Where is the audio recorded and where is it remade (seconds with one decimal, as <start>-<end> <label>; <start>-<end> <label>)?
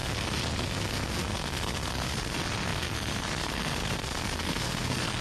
0.0-5.2 remade